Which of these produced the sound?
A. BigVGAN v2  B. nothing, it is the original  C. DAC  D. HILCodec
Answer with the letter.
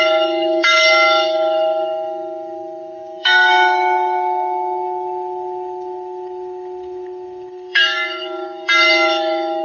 C